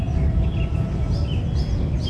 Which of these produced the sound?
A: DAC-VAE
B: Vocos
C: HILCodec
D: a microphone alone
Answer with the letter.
D